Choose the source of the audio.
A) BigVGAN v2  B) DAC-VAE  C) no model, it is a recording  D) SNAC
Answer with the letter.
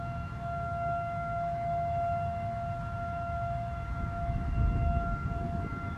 B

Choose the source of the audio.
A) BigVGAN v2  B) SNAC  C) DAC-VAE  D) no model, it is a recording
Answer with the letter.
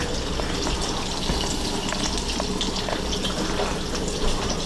D